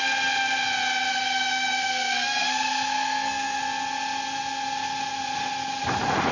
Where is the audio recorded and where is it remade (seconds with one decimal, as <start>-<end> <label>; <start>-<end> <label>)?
0.0-1.1 recorded; 1.1-3.6 remade; 3.6-6.3 recorded